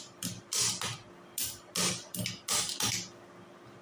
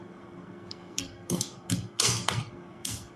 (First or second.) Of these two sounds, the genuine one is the first